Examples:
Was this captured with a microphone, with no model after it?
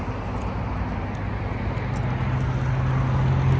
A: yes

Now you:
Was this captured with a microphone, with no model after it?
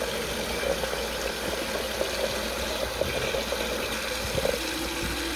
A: yes